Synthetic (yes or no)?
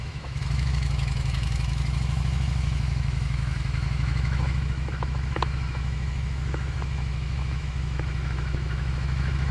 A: yes